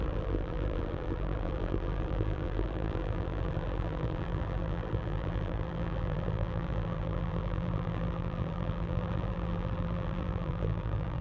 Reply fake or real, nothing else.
fake